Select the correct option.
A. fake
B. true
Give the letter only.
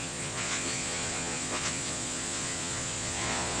A